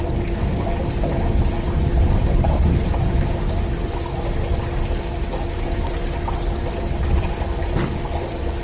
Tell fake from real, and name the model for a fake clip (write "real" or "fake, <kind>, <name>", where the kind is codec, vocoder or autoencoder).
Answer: real